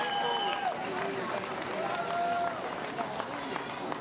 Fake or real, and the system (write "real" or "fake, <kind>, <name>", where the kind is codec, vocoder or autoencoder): real